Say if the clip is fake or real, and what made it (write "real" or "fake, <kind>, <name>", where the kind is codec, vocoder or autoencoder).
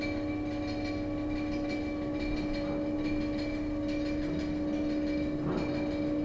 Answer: real